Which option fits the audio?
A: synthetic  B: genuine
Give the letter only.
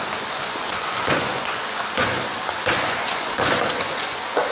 A